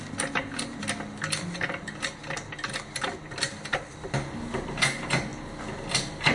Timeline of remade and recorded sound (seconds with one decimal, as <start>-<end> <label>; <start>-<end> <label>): 0.0-6.3 recorded